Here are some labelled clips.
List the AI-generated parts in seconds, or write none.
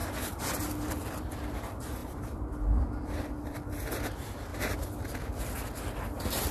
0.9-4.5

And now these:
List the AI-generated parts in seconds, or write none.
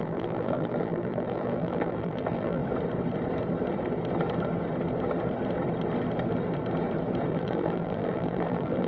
0.0-2.6; 7.3-8.9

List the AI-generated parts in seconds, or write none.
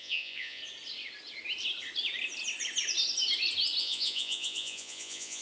0.0-0.6; 3.8-5.4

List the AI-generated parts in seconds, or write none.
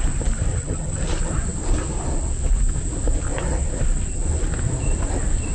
0.5-1.0